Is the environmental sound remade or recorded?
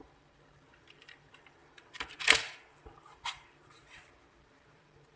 remade